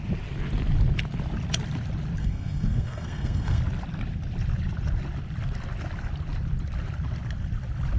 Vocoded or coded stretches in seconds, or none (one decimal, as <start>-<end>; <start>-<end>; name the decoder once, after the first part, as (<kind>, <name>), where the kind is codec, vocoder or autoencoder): 2.2-3.6 (codec, SNAC)